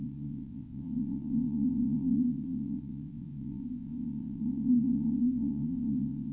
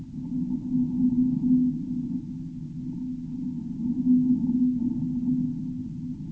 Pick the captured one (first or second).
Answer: second